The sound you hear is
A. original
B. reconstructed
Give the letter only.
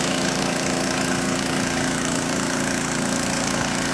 B